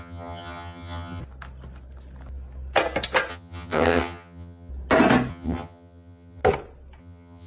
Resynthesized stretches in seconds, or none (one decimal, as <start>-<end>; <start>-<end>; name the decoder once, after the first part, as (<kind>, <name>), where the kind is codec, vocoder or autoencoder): 0.0-1.2 (vocoder, HiFi-GAN); 3.3-4.7; 5.3-6.4; 7.0-7.5

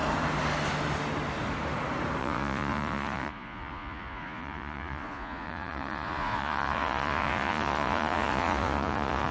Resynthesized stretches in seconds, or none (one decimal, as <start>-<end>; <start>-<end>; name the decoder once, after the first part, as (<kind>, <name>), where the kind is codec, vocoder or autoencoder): 2.2-9.3 (vocoder, Vocos)

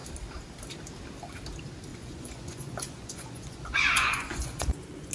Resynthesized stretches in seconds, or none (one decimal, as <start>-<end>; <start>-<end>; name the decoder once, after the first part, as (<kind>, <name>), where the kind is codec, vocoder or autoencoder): 1.9-5.1 (vocoder, Vocos)

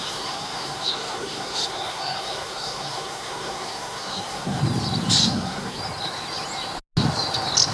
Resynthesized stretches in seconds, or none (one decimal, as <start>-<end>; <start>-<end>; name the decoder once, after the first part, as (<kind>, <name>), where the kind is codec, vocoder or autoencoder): 0.0-4.6 (codec, SNAC); 5.2-5.8

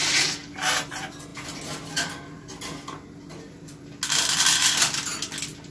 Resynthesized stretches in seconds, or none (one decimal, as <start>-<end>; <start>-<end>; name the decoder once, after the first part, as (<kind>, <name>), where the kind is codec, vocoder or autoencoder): none

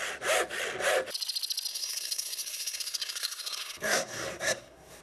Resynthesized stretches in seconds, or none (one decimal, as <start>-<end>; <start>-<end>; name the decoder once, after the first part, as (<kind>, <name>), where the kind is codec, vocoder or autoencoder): 1.7-5.0 (codec, SNAC)